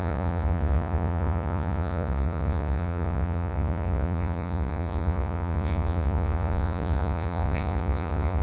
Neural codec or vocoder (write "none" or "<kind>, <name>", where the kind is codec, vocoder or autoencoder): vocoder, Vocos